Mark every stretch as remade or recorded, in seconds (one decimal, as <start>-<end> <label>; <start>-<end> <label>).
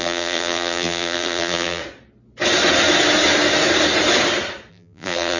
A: 0.0-1.8 remade; 1.8-4.7 recorded; 4.7-5.4 remade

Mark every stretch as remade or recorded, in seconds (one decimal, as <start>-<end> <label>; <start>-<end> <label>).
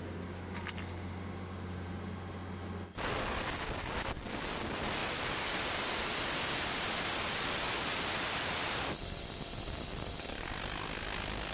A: 0.0-11.5 recorded